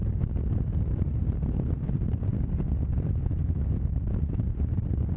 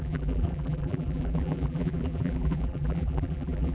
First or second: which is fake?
second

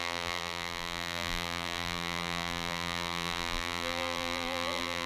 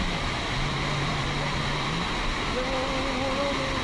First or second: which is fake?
first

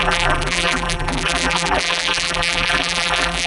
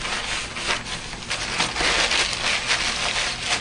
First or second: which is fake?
first